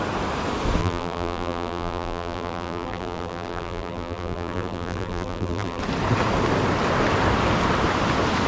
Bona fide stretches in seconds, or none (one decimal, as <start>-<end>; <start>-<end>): 0.0-0.8; 5.8-8.5

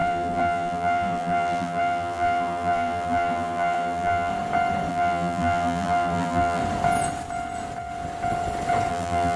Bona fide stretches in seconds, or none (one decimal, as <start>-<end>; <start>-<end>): 4.3-4.9; 6.6-8.9